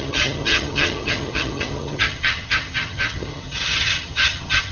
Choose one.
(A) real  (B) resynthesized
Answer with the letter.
B